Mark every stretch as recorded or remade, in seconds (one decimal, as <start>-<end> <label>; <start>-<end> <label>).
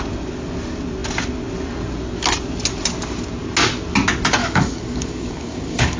0.0-4.4 recorded; 4.4-6.0 remade